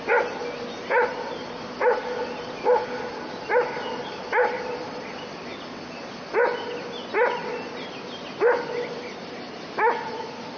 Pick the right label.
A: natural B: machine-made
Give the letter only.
A